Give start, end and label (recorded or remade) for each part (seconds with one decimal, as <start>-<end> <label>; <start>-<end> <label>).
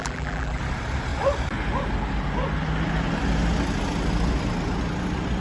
0.0-0.6 remade; 0.6-5.4 recorded